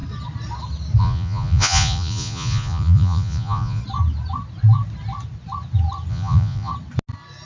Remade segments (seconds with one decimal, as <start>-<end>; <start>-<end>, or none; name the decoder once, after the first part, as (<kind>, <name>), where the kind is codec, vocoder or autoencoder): 1.0-3.8 (vocoder, Vocos); 6.1-6.7